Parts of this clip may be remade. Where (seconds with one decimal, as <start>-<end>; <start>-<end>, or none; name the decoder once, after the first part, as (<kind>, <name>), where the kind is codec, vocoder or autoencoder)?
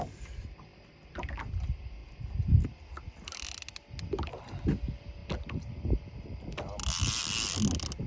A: none